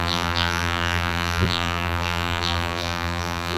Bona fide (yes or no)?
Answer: no